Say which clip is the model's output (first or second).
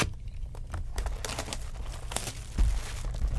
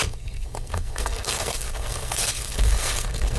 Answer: second